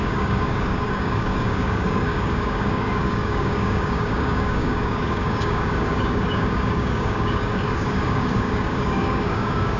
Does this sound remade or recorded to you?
remade